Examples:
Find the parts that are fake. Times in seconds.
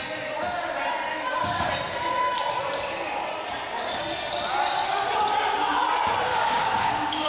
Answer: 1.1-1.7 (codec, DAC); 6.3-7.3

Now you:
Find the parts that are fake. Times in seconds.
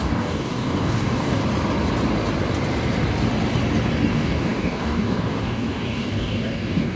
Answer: 0.0-1.4 (codec, DAC); 4.1-7.0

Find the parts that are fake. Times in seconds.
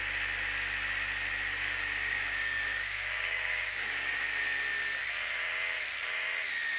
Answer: 1.5-4.3 (codec, DAC)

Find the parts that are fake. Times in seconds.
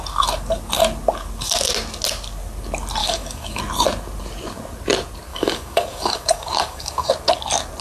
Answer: 3.0-3.6 (codec, DAC); 5.3-7.1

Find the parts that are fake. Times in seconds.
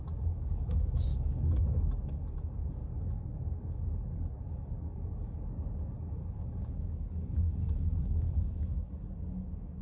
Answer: 0.0-9.8 (codec, DAC)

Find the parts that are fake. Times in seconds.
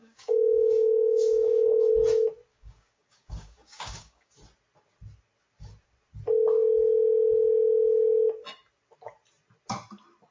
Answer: 0.0-1.9 (codec, DAC); 2.5-4.3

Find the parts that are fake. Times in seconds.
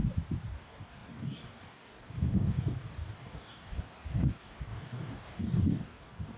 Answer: 0.5-6.4 (codec, DAC)